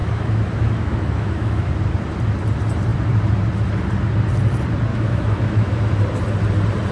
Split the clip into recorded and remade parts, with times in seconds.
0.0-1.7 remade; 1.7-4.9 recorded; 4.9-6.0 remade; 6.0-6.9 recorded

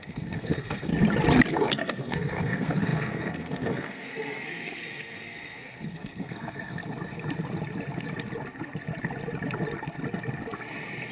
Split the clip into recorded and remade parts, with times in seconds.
0.0-0.9 remade; 0.9-1.5 recorded; 1.5-6.8 remade; 6.8-11.1 recorded

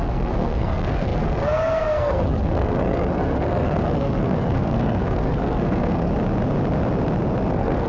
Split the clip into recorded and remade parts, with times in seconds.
0.0-6.1 remade; 6.1-7.5 recorded; 7.5-7.9 remade